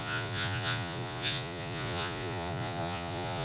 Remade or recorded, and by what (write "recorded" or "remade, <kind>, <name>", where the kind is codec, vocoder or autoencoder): remade, vocoder, Vocos